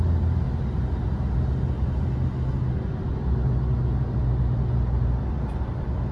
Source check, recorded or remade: recorded